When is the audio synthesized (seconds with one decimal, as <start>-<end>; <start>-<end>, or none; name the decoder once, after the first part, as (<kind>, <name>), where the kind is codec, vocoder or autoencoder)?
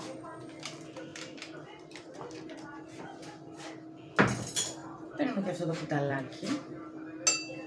4.8-6.2 (vocoder, BigVGAN v2)